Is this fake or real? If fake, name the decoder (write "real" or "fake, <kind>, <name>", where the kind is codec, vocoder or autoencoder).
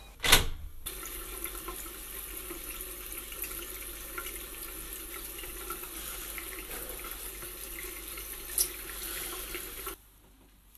real